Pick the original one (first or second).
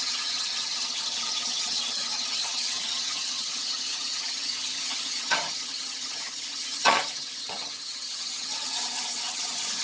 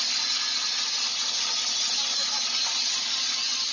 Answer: second